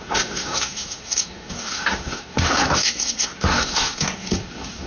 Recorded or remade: remade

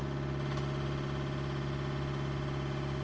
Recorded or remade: recorded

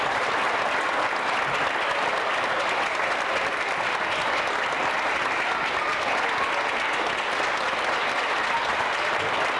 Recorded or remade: recorded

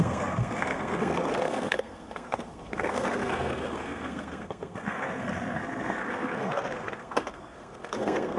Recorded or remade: remade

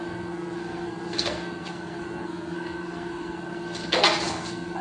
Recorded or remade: remade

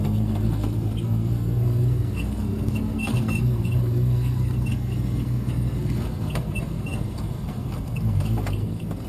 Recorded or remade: remade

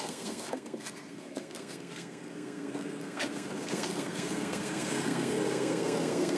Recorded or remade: remade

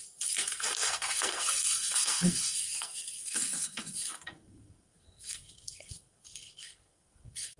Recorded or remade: remade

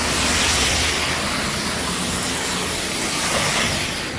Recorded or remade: recorded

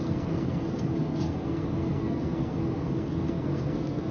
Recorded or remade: remade